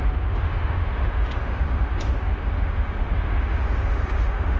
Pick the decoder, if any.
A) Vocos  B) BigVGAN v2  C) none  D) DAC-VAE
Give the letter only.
D